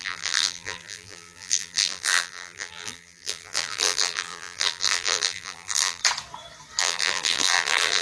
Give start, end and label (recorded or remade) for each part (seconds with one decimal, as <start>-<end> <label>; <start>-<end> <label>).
0.0-6.0 remade; 6.0-6.8 recorded; 6.8-8.0 remade

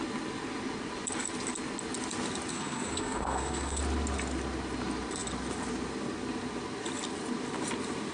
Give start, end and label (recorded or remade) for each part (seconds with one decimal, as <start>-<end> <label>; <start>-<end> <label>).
0.0-2.5 recorded; 2.5-3.8 remade; 3.8-8.1 recorded

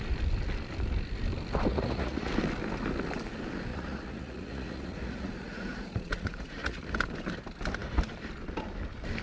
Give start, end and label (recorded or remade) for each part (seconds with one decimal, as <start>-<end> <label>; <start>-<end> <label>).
0.0-1.7 recorded; 1.7-2.3 remade; 2.3-3.7 recorded; 3.7-6.8 remade; 6.8-9.2 recorded

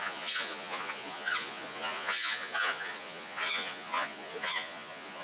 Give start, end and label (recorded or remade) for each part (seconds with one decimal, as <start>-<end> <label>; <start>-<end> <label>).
0.0-5.2 remade